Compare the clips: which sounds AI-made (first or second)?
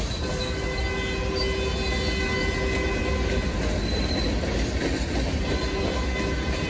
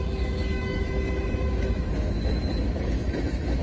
second